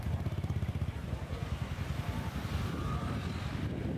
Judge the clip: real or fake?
fake